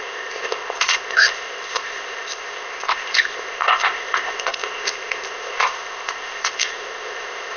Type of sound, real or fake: fake